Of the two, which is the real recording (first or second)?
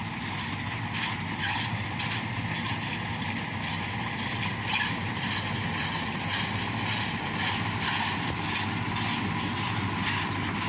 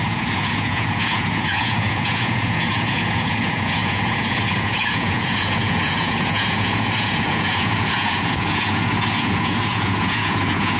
first